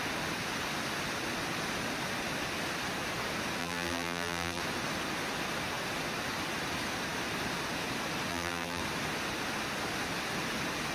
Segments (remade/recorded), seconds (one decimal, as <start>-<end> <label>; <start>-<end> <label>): 0.0-3.6 recorded; 3.6-4.6 remade; 4.6-8.3 recorded; 8.3-8.8 remade; 8.8-10.9 recorded